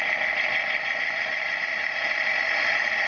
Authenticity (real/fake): real